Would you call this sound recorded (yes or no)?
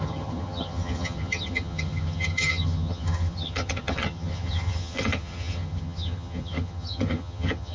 no